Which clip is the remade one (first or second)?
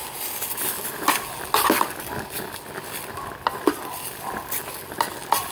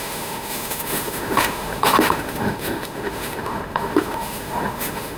second